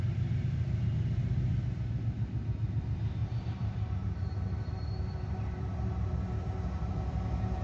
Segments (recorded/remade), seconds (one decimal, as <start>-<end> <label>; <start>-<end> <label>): 0.0-3.2 recorded; 3.2-6.9 remade; 6.9-7.6 recorded